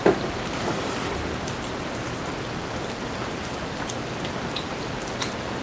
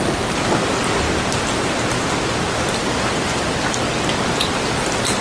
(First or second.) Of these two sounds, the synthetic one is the second